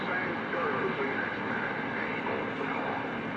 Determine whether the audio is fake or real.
real